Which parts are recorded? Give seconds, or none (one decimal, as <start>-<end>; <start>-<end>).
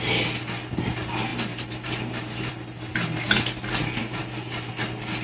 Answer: 0.0-1.3; 2.5-4.0; 4.7-5.2